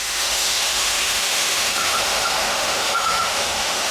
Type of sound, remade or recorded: remade